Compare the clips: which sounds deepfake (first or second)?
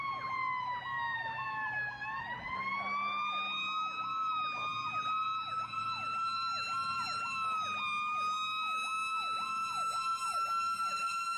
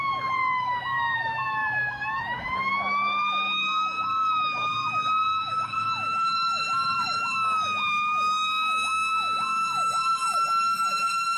second